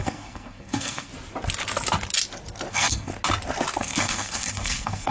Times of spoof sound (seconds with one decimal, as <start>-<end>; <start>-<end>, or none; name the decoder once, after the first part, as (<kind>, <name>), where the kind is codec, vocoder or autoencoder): 0.0-1.1 (codec, SNAC); 2.7-3.1; 3.8-5.1